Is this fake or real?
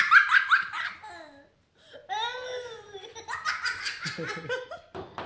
real